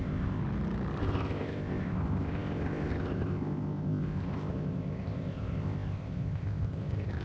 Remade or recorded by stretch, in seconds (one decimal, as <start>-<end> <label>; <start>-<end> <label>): 0.0-0.4 remade; 0.4-1.0 recorded; 1.0-7.2 remade